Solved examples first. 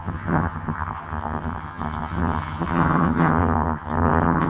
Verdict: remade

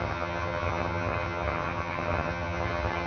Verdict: remade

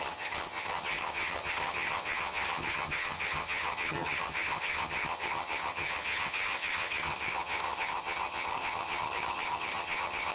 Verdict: remade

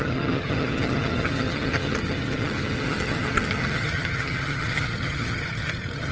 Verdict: remade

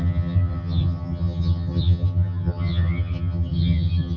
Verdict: remade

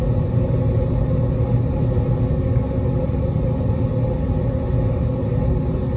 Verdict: recorded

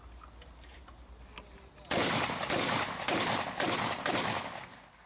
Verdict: recorded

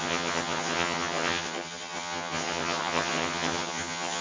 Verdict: remade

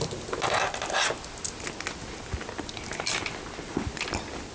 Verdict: recorded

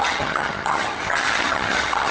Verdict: remade